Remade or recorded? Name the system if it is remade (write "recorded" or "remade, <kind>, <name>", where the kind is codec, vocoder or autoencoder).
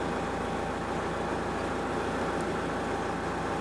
recorded